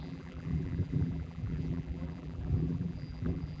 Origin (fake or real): fake